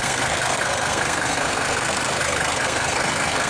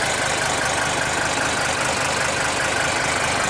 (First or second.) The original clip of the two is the second